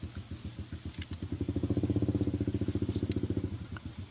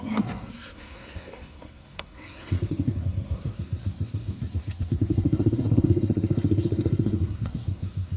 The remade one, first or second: second